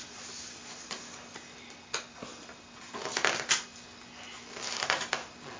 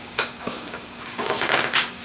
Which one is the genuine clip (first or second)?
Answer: first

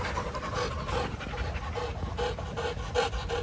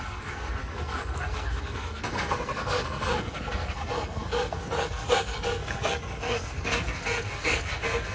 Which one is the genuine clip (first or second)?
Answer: first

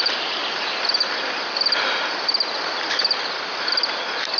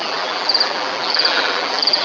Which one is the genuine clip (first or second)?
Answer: first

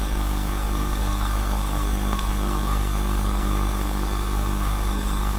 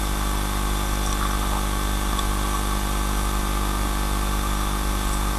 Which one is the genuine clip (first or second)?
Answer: second